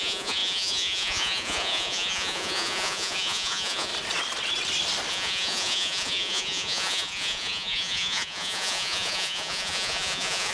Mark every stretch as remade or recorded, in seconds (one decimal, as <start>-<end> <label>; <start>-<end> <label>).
0.0-3.9 remade; 3.9-5.1 recorded; 5.1-10.5 remade